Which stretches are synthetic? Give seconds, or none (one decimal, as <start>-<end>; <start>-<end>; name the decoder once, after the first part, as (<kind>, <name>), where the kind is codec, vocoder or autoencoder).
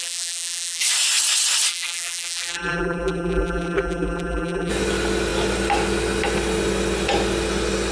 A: 0.0-0.8 (vocoder, BigVGAN v2); 1.7-4.7